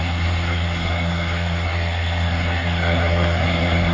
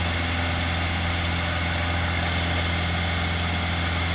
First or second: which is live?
second